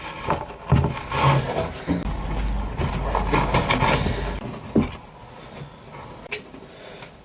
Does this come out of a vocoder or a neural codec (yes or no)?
no